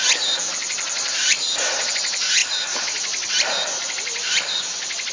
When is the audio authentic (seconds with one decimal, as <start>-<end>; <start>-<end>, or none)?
0.0-1.2; 1.9-2.4; 3.3-3.8